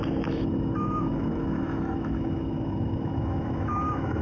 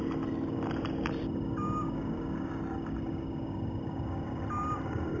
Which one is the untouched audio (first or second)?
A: second